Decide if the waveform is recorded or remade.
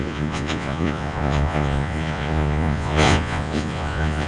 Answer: remade